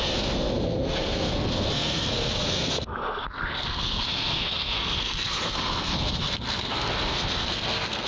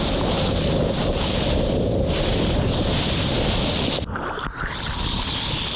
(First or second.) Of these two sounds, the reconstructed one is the first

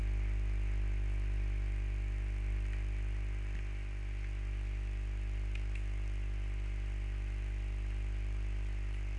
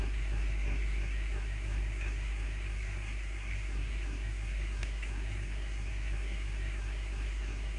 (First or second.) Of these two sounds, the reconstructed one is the second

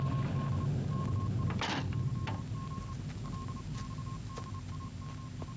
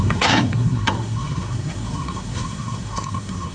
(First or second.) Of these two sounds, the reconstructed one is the second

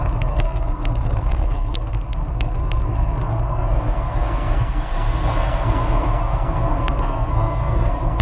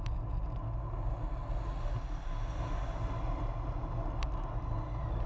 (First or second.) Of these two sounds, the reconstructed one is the first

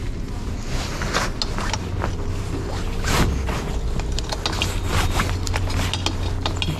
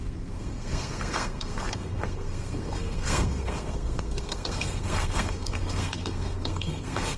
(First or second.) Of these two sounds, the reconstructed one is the second